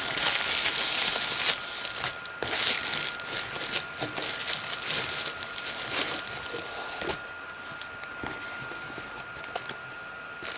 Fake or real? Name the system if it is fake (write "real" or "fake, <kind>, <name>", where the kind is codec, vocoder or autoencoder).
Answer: real